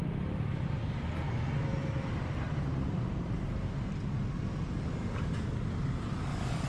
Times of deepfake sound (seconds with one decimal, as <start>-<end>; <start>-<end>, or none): 1.7-3.9